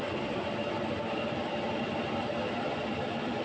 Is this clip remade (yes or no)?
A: yes